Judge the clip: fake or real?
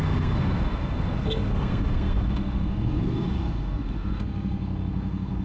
fake